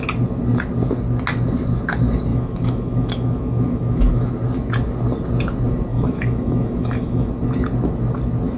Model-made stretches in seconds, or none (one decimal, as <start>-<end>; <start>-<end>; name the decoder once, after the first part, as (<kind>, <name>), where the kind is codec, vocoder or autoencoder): 2.3-4.3 (autoencoder, DAC-VAE); 5.9-7.3